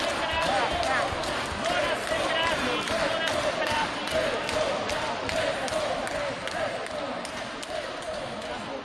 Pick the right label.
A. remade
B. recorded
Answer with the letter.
B